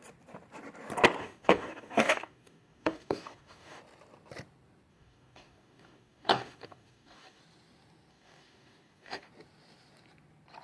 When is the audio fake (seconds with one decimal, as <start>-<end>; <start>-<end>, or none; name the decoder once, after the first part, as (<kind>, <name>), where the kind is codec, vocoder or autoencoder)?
1.2-3.8 (codec, DAC); 4.9-7.4; 8.1-9.3